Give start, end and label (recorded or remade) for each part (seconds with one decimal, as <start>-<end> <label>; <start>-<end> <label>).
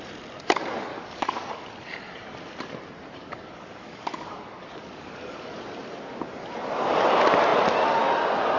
0.0-0.9 recorded; 0.9-1.7 remade; 1.7-3.2 recorded; 3.2-5.6 remade; 5.6-8.6 recorded